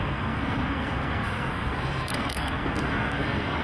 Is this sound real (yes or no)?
no